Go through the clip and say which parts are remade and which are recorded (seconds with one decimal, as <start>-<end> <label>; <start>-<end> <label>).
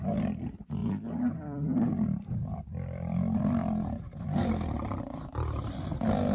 0.0-6.3 recorded